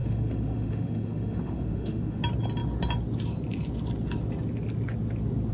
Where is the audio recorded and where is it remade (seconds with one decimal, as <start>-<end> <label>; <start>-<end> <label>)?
0.0-2.2 remade; 2.2-5.5 recorded